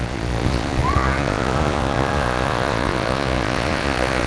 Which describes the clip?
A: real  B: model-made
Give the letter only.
B